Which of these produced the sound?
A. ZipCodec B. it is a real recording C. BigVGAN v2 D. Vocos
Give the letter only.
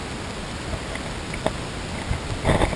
B